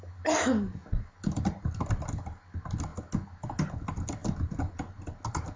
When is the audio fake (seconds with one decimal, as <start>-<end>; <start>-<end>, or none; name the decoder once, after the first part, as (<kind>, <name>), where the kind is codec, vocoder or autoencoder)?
none